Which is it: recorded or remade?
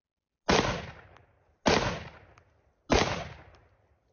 recorded